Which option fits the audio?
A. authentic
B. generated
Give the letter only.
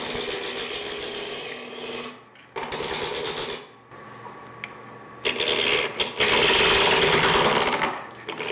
A